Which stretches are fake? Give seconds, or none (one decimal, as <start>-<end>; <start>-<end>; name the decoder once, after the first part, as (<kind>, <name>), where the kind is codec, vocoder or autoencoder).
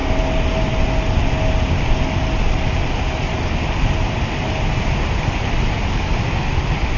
none